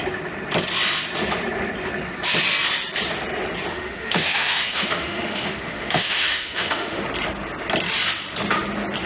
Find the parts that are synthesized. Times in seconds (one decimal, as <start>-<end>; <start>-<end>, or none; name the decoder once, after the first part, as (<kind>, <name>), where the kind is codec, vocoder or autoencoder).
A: 3.7-7.0 (autoencoder, DAC-VAE)